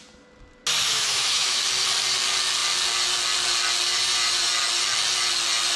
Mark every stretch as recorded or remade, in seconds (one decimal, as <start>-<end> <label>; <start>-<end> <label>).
0.0-0.9 recorded; 0.9-1.6 remade; 1.6-5.8 recorded